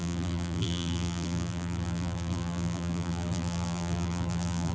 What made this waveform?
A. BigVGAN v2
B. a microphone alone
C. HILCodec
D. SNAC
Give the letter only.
A